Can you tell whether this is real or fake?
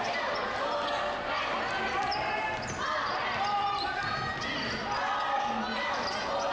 real